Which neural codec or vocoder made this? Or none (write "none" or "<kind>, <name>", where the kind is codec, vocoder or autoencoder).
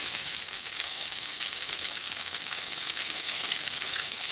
codec, SNAC